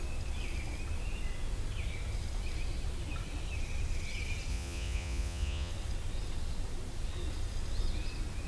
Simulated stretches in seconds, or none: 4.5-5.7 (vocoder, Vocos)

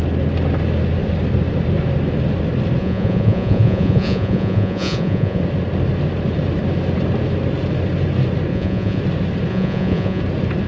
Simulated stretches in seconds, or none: 2.8-5.4 (vocoder, Vocos); 8.5-9.0; 9.5-10.2

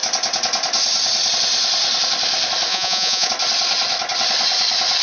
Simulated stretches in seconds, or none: 2.7-3.3 (vocoder, Vocos)

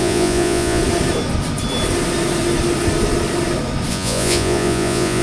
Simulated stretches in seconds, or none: 0.0-0.8 (vocoder, Vocos); 3.9-5.2

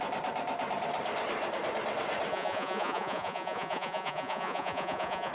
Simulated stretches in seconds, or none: 2.3-5.3 (vocoder, Vocos)

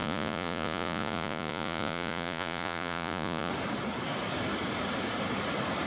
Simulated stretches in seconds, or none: 0.0-3.5 (vocoder, Vocos)

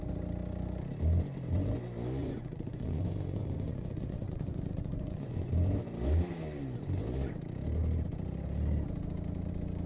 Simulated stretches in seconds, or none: 2.2-5.5 (vocoder, Vocos)